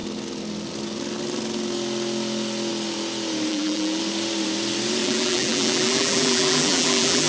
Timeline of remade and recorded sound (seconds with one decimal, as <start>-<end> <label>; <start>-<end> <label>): 0.0-3.5 recorded; 3.5-4.0 remade; 4.0-5.0 recorded; 5.0-7.3 remade